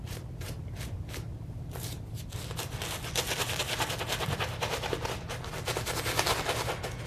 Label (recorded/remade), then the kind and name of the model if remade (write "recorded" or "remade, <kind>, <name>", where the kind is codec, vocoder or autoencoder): recorded